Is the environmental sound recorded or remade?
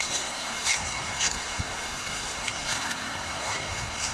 remade